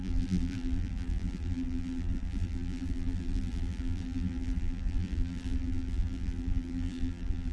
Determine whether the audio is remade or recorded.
remade